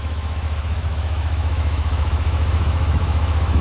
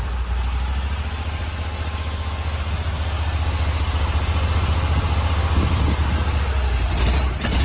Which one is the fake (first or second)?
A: first